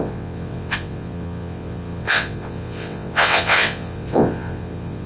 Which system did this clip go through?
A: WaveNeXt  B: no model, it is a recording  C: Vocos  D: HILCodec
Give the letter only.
A